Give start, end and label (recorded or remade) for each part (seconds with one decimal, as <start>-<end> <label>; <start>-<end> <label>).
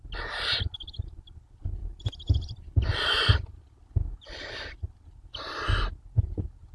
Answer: 0.0-6.7 recorded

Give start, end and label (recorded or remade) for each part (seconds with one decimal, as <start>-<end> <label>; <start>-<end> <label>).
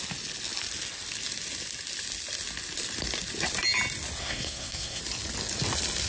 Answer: 0.0-4.2 recorded; 4.2-5.0 remade; 5.0-6.1 recorded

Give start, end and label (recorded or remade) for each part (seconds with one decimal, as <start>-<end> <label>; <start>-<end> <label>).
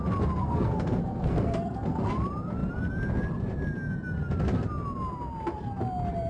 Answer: 0.0-0.4 recorded; 0.4-2.1 remade; 2.1-6.3 recorded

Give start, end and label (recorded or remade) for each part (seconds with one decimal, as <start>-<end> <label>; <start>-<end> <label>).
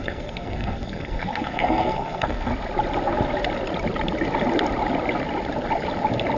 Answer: 0.0-2.5 remade; 2.5-6.4 recorded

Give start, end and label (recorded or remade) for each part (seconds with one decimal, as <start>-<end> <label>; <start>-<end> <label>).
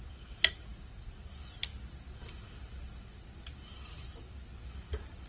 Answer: 0.0-5.3 recorded